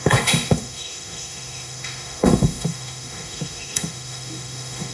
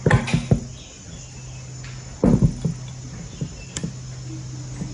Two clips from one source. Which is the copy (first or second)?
first